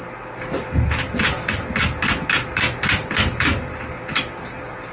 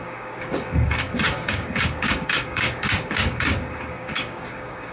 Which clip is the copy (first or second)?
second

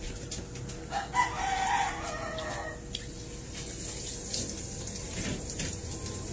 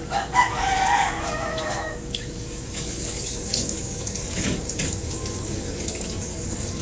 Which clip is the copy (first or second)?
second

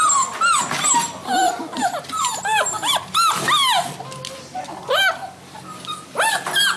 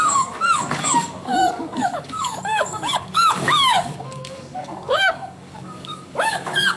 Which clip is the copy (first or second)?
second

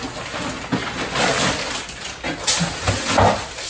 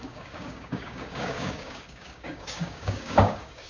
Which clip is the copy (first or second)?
second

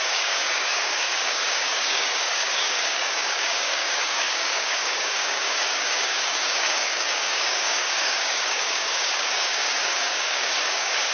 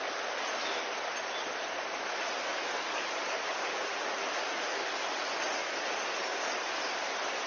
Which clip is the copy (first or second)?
first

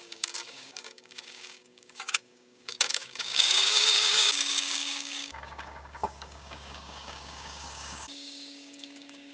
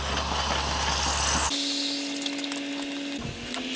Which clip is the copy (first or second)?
first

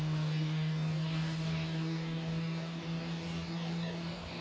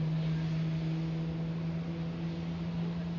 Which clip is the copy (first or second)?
first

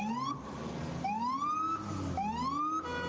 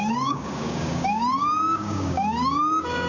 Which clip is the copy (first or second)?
second